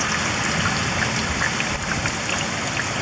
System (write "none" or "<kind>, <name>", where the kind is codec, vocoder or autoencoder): none